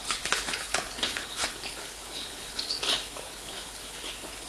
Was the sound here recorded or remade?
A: remade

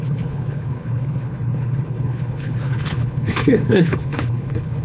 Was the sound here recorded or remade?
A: remade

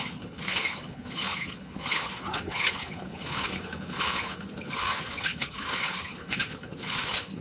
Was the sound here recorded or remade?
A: remade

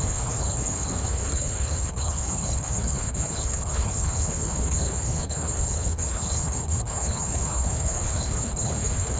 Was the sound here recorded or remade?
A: remade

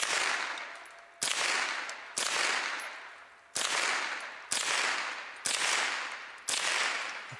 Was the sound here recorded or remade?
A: recorded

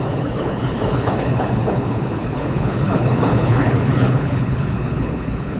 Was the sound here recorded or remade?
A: remade